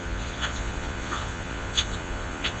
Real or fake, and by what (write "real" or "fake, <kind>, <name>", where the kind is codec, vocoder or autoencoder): fake, vocoder, Vocos